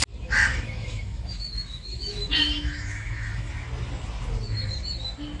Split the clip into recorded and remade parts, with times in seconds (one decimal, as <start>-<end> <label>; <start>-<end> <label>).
0.0-0.5 recorded; 0.5-3.5 remade; 3.5-5.4 recorded

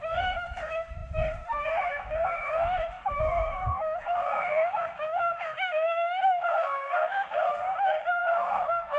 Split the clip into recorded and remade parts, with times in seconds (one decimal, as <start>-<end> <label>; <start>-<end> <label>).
0.0-9.0 remade